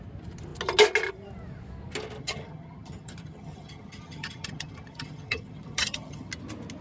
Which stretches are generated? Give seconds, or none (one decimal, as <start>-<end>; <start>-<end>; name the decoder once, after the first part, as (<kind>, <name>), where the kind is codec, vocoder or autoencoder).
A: 2.2-6.3 (vocoder, HiFi-GAN)